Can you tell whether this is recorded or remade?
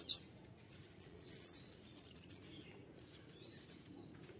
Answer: remade